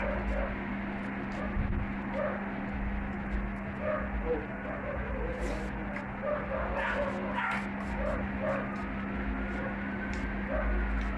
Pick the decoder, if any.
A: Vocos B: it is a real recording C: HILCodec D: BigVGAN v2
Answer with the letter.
B